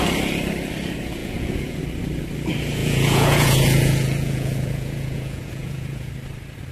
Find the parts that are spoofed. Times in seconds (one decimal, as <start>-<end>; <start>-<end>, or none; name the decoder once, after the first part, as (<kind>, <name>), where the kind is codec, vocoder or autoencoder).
1.2-1.8 (vocoder, Vocos); 2.8-6.1